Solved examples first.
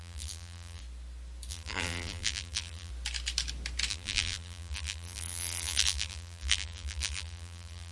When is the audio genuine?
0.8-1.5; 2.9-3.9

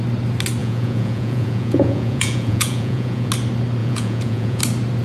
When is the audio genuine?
0.0-0.6; 3.3-3.8; 4.6-5.0

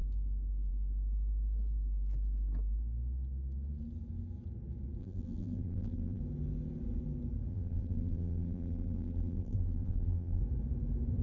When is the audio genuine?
0.0-5.0; 6.2-7.5; 10.4-11.2

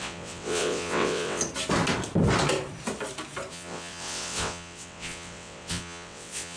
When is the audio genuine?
1.4-3.5